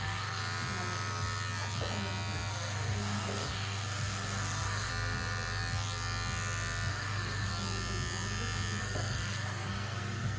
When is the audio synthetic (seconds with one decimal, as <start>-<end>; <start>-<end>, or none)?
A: 0.0-0.4; 2.5-4.9; 6.9-7.5; 8.8-10.4